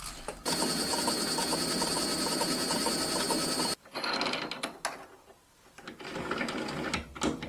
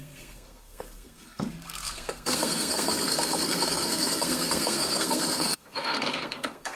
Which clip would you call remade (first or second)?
second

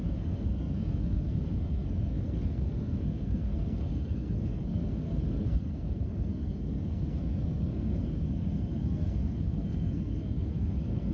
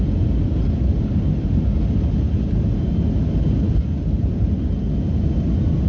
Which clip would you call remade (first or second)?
first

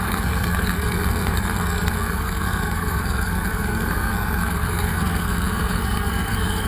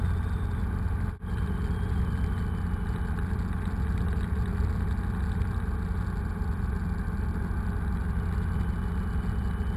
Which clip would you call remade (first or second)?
first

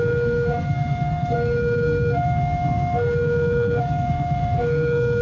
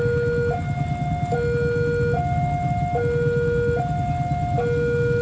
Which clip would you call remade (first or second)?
first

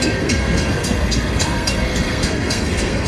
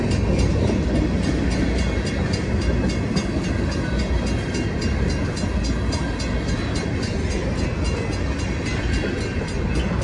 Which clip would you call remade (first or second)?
first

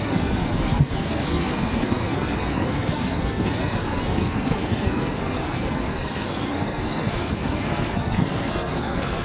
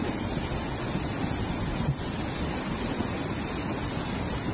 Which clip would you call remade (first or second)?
first